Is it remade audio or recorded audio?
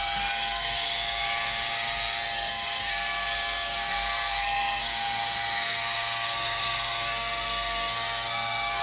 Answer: remade